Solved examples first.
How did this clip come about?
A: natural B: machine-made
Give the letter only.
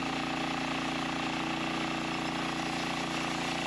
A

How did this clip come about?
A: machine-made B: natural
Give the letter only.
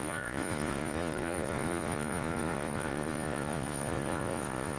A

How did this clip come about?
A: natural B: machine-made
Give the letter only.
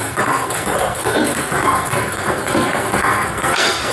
B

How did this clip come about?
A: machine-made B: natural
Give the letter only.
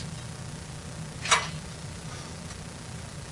B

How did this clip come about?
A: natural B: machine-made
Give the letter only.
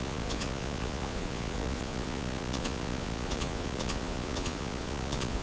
B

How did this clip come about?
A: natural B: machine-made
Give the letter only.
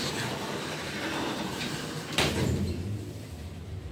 B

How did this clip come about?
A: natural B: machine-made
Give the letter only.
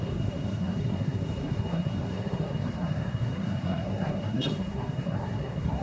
B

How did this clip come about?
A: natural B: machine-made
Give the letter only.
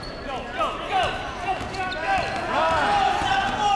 A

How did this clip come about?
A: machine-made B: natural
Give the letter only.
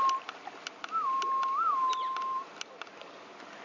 B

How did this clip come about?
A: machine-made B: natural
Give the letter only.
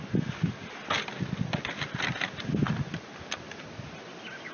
B